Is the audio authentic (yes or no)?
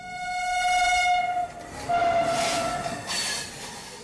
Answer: yes